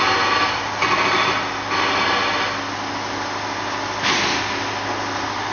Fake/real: real